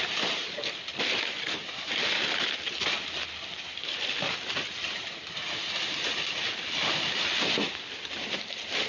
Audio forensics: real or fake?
real